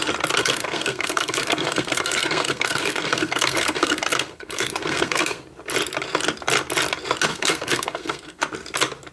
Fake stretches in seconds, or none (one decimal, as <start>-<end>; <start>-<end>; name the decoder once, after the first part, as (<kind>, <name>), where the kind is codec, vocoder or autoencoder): 0.4-5.4 (codec, SNAC); 7.3-8.4